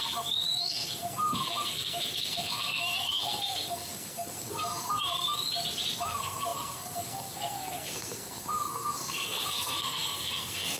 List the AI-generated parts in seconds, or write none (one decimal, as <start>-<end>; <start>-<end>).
0.0-5.5; 6.0-10.8